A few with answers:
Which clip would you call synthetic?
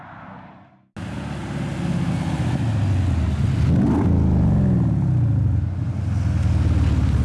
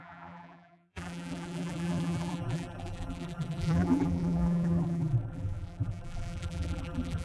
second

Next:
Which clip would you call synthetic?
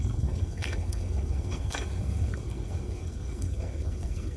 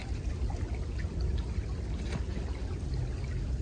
first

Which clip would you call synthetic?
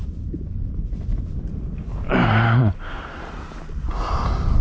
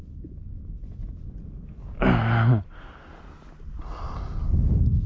first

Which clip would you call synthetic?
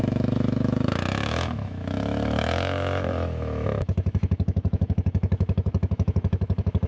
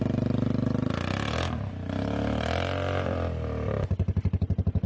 first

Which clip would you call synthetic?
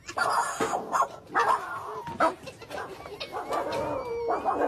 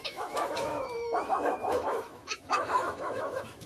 second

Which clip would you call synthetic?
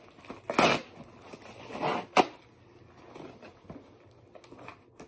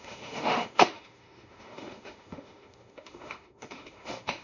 second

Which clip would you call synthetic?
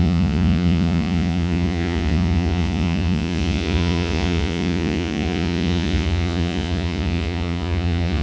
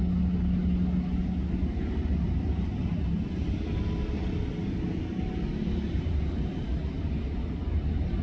first